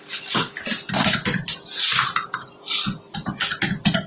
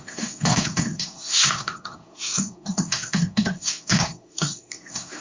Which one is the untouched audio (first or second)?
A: first